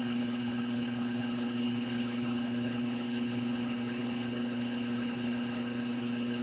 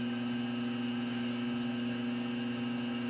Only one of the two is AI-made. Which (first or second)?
first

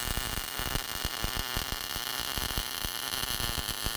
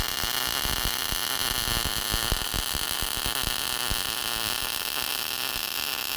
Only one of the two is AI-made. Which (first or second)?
first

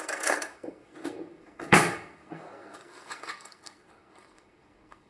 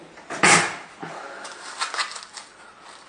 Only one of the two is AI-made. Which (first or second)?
first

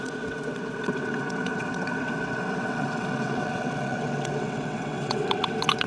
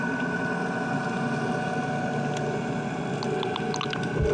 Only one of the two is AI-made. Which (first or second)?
first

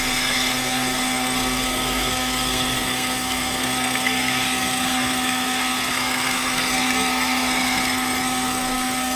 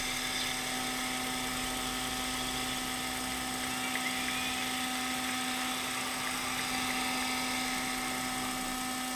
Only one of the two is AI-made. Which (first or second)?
first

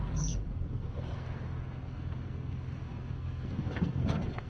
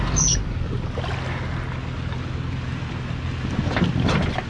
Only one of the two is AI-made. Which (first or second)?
first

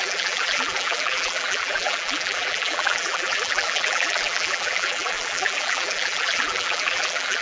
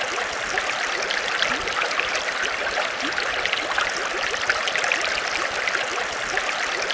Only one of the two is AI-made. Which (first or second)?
first